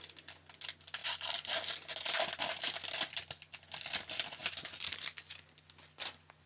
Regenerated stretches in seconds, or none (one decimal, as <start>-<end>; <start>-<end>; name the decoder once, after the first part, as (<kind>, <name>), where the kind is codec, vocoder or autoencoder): 1.0-1.6 (vocoder, BigVGAN v2)